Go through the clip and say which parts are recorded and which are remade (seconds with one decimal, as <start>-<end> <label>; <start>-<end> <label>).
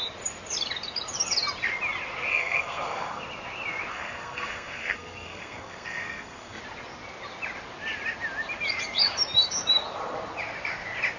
0.0-2.3 recorded; 2.3-3.2 remade; 3.2-3.9 recorded; 3.9-6.6 remade; 6.6-11.2 recorded